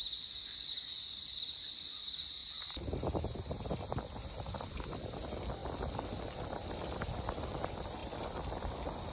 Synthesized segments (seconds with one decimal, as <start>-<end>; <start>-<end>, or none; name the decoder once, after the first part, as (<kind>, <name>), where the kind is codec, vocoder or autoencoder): none